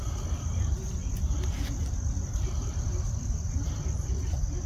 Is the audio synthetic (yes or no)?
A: no